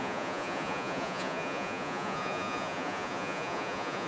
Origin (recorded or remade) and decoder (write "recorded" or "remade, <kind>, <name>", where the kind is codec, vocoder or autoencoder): remade, vocoder, Vocos